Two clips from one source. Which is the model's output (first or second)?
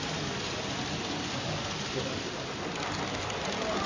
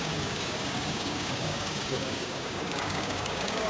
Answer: second